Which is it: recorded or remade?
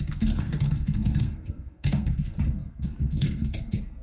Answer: remade